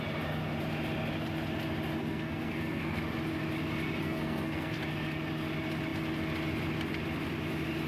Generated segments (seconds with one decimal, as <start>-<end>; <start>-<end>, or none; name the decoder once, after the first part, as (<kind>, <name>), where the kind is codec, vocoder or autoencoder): 2.0-3.0 (codec, SNAC); 4.0-4.8